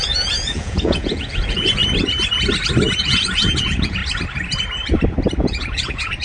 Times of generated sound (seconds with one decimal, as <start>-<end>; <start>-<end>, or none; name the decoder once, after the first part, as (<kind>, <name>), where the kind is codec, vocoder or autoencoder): 0.0-1.8 (vocoder, Vocos); 3.0-4.0; 5.4-6.2